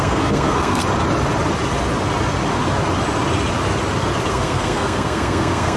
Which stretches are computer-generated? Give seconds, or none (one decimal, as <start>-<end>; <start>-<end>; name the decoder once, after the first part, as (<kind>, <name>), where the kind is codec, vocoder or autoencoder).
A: 0.0-0.8 (codec, SNAC); 4.3-5.8